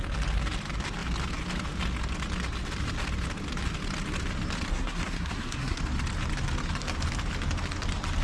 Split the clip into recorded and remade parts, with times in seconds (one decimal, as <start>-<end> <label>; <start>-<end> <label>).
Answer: 0.0-4.7 recorded; 4.7-5.8 remade; 5.8-8.2 recorded